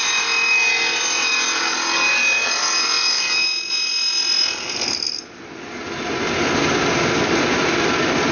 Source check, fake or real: real